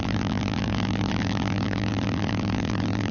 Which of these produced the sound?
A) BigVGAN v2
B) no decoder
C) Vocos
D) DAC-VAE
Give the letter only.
A